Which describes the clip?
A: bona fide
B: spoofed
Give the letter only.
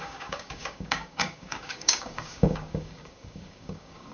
B